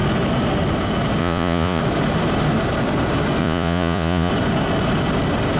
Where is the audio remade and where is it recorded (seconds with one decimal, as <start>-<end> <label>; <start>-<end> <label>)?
0.0-1.2 recorded; 1.2-1.8 remade; 1.8-3.4 recorded; 3.4-4.3 remade; 4.3-5.6 recorded